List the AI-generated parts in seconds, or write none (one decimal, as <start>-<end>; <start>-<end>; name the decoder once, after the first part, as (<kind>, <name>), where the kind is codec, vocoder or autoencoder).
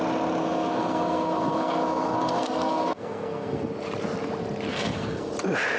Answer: 0.4-3.7 (codec, SNAC); 4.7-5.3